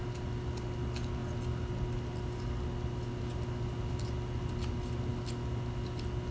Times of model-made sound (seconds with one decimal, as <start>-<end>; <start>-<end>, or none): none